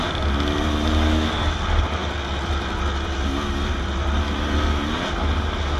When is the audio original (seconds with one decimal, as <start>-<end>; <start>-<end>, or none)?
0.0-5.8